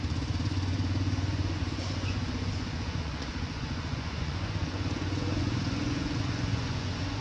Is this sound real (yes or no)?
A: no